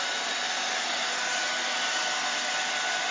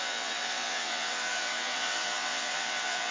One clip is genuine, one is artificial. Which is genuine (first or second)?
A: first